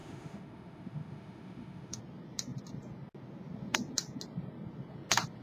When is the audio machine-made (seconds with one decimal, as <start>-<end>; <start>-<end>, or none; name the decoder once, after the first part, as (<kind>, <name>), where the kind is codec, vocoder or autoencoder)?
0.0-2.0 (autoencoder, DAC-VAE)